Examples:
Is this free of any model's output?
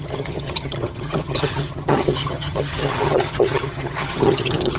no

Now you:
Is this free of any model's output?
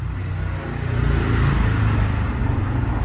yes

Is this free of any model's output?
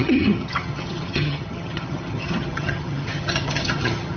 no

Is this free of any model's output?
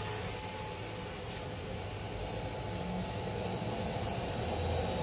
yes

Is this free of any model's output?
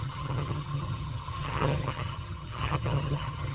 no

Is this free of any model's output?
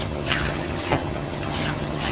no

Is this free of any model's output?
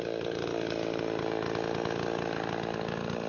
yes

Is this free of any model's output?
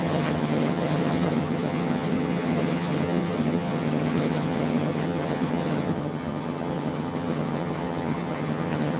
no